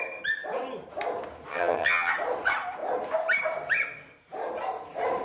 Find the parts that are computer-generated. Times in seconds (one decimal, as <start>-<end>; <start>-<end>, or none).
1.5-2.1